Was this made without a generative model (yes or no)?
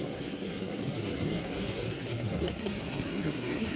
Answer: no